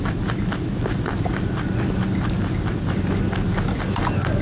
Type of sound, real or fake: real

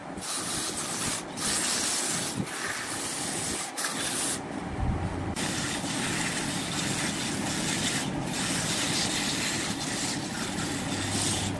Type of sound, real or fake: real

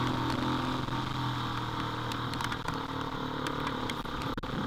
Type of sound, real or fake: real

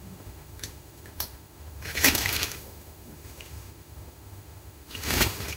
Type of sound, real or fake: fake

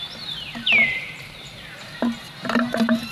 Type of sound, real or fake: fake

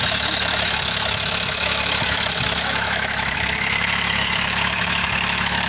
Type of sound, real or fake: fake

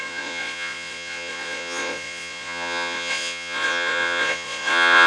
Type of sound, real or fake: fake